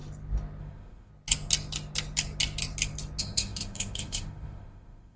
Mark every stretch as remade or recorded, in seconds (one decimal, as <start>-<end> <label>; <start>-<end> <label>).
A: 0.0-0.6 recorded; 0.6-1.1 remade; 1.1-3.2 recorded; 3.2-5.2 remade